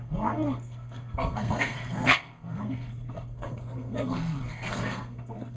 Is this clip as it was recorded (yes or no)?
no